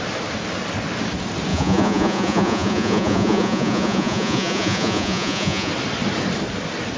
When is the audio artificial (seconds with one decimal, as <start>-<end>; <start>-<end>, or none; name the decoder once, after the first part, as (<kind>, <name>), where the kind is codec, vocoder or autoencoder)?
1.5-5.7 (vocoder, Vocos)